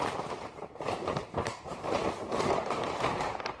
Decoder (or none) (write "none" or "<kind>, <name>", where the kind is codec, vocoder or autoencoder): vocoder, BigVGAN v2